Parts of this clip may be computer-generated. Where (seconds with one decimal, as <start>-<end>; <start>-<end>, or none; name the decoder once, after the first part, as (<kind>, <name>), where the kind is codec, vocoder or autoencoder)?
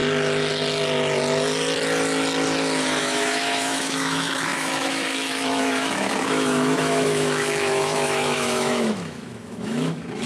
3.0-10.3 (autoencoder, DAC-VAE)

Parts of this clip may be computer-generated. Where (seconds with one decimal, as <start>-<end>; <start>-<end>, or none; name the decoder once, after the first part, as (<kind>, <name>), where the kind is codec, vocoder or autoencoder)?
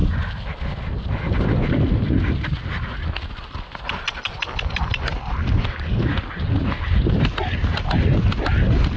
none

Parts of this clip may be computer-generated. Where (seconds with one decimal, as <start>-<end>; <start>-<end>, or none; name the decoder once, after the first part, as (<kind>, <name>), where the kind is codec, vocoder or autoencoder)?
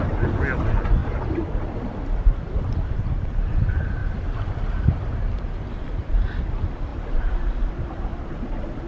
1.0-2.6 (vocoder, BigVGAN v2); 8.1-8.9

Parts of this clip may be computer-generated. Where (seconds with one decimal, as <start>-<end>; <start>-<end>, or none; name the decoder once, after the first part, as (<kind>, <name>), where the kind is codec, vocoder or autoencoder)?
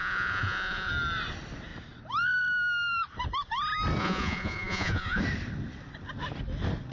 0.0-0.9 (vocoder, Vocos); 4.0-5.2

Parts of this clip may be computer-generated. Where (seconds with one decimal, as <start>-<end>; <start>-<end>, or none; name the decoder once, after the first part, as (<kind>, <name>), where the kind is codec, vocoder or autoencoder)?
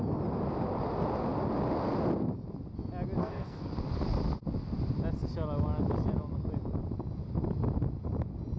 3.2-3.8 (codec, SNAC)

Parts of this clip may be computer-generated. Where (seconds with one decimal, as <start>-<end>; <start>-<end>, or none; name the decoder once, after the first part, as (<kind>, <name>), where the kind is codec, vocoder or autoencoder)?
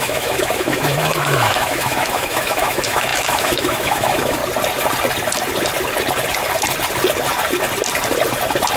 0.0-4.4 (autoencoder, DAC-VAE)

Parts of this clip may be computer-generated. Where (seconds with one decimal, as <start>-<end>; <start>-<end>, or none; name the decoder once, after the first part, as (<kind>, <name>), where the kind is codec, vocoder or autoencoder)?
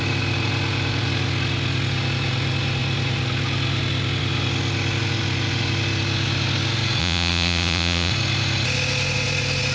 7.0-8.1 (vocoder, Vocos)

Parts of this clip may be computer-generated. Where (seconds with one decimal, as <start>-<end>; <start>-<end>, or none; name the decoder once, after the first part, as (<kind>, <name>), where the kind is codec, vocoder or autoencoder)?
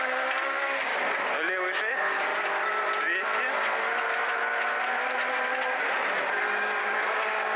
0.0-0.9 (codec, DAC); 1.8-2.3; 6.4-7.6